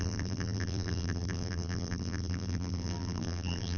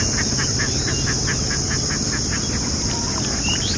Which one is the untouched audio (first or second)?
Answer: second